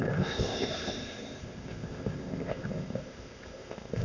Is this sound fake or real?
fake